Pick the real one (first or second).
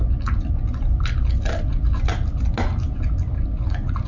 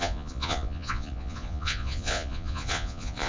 first